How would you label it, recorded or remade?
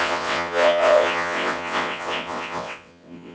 remade